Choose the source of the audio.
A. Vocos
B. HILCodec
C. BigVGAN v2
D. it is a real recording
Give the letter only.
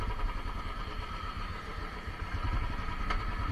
D